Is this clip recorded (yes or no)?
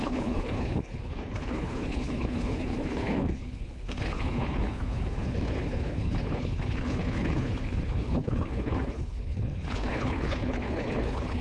no